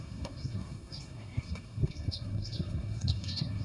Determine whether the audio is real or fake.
fake